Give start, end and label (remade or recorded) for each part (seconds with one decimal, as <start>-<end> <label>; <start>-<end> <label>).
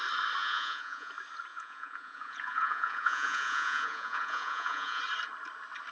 0.0-0.4 recorded; 0.4-1.1 remade; 1.1-1.5 recorded; 1.5-5.0 remade; 5.0-5.9 recorded